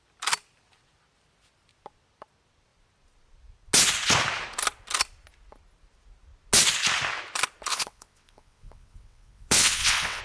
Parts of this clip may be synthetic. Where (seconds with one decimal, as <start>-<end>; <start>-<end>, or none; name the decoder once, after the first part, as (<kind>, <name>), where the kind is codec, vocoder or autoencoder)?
7.7-10.2 (vocoder, WaveNeXt)